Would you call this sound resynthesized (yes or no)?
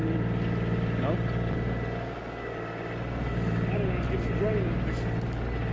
no